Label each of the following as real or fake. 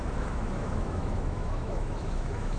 fake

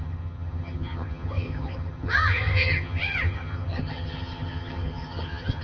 fake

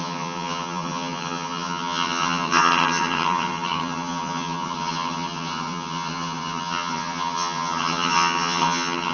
fake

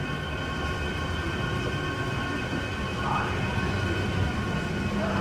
real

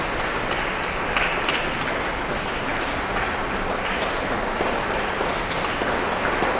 real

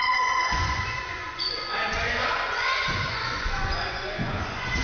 fake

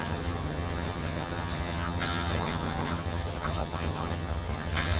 fake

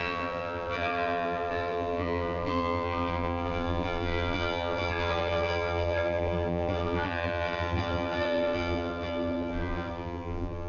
fake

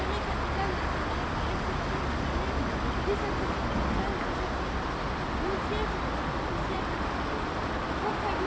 real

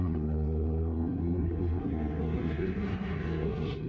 fake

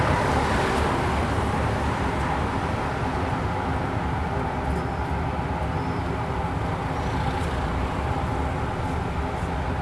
real